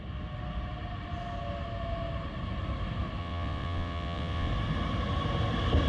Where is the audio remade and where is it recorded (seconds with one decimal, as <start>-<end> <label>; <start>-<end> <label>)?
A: 0.0-3.2 recorded; 3.2-4.5 remade; 4.5-5.9 recorded